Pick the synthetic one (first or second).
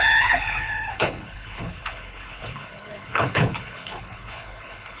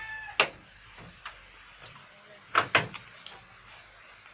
first